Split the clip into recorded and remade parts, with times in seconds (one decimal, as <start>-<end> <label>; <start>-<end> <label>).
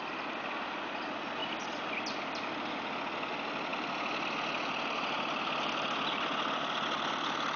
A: 0.0-7.6 recorded